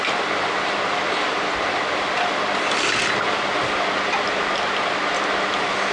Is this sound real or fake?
real